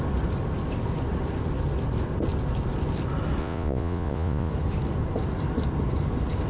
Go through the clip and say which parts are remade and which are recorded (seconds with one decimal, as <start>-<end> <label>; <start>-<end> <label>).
0.0-3.4 recorded; 3.4-4.5 remade; 4.5-6.5 recorded